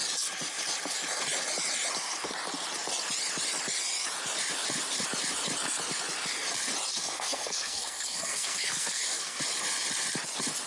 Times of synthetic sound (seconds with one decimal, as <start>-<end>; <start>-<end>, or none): 6.9-9.4